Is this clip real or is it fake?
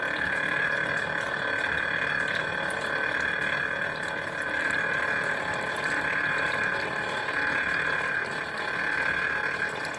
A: real